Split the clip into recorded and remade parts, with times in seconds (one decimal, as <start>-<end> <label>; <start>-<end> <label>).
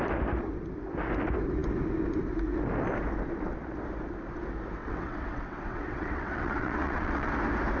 0.0-4.8 recorded; 4.8-7.3 remade; 7.3-7.8 recorded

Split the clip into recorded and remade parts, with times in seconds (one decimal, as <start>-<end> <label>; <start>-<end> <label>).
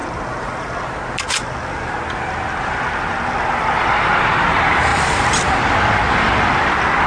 0.0-3.5 recorded; 3.5-7.1 remade